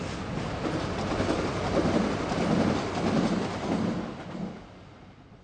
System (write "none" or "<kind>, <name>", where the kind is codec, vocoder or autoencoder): none